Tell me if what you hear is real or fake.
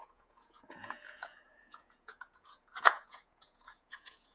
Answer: fake